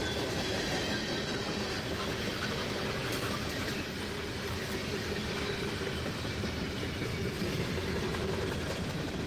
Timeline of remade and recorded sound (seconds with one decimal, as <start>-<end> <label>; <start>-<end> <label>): 0.0-4.3 recorded; 4.3-7.1 remade; 7.1-7.6 recorded; 7.6-9.3 remade